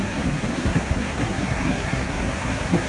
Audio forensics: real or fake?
fake